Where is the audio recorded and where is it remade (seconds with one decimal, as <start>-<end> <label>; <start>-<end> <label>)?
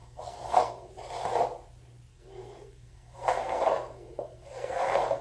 0.0-0.9 remade; 0.9-2.1 recorded; 2.1-5.2 remade